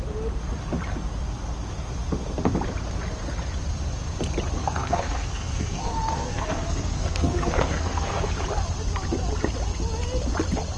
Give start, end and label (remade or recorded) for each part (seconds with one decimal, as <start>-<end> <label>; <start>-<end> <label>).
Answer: 0.0-4.6 recorded; 4.6-8.3 remade; 8.3-10.8 recorded